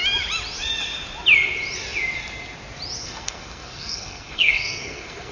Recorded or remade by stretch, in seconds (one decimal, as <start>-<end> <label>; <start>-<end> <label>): 0.0-3.0 recorded; 3.0-5.3 remade